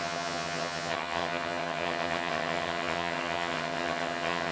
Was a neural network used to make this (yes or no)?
yes